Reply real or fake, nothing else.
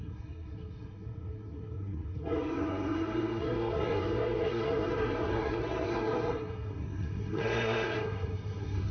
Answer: fake